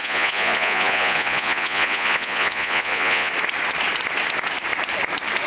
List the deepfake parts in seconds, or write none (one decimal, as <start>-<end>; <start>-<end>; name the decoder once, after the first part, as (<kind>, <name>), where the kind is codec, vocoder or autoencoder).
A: 0.0-3.3 (vocoder, Vocos)